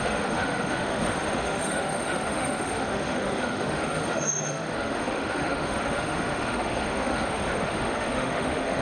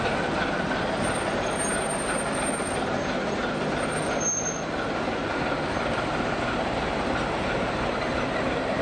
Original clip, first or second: second